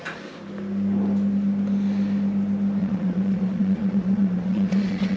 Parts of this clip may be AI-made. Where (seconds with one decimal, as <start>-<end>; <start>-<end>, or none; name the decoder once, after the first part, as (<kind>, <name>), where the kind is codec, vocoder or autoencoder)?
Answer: 2.8-5.2 (vocoder, Vocos)